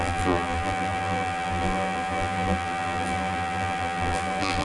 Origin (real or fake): fake